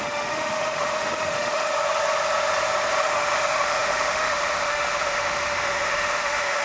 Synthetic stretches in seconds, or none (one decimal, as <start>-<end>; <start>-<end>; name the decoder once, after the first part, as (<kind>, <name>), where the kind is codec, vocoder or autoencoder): 0.0-1.7 (autoencoder, DAC-VAE); 3.0-6.6